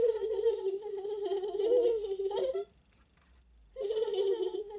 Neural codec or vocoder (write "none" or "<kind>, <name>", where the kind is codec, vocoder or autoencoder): none